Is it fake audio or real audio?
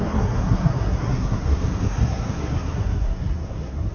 fake